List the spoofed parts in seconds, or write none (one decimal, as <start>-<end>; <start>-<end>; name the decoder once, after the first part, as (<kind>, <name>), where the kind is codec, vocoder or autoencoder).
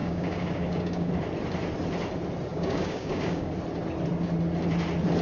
0.0-1.1 (codec, DAC); 2.5-3.5